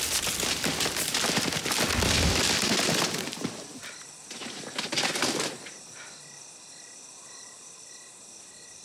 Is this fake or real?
real